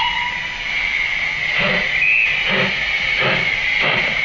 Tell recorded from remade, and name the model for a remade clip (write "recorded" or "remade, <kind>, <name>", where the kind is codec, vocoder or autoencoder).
recorded